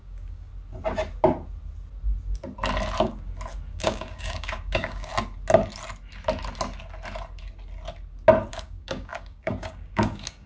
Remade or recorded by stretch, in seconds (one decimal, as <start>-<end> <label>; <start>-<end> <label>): 0.0-0.5 remade; 0.5-3.7 recorded; 3.7-5.1 remade; 5.1-8.5 recorded; 8.5-10.5 remade